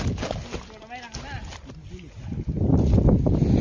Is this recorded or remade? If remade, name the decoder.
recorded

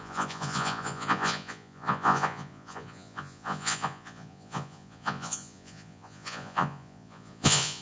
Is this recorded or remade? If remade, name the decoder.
remade, vocoder, Vocos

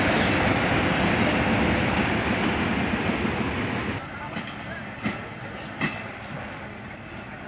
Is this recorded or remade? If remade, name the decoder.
recorded